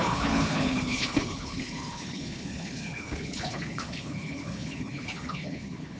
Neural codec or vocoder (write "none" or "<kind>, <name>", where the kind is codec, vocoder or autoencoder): codec, HILCodec